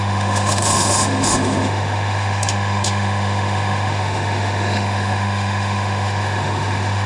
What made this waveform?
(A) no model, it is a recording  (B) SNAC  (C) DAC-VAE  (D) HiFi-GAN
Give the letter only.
C